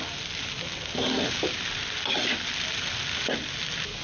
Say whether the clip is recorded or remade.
recorded